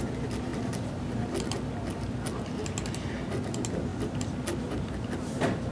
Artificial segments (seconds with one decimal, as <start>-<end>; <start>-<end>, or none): none